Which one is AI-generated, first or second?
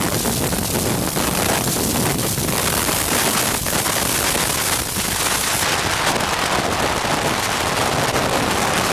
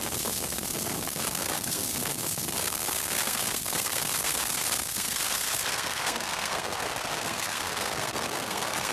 second